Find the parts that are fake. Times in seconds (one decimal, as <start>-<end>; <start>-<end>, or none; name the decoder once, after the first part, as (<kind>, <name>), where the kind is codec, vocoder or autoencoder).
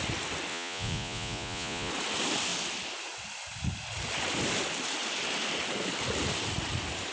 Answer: 0.5-1.9 (vocoder, Vocos)